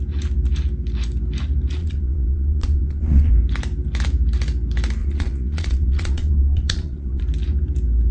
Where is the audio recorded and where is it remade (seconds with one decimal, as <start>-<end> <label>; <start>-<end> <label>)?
0.0-1.8 recorded; 1.8-3.3 remade; 3.3-5.0 recorded; 5.0-7.2 remade; 7.2-8.1 recorded